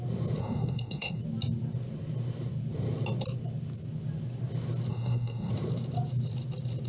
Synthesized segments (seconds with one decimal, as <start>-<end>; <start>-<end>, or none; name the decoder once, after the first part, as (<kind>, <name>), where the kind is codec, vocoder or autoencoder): 0.4-1.2 (codec, SNAC); 4.9-5.5